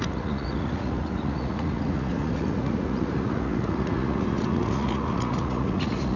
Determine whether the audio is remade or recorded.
remade